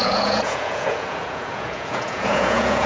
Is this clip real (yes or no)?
no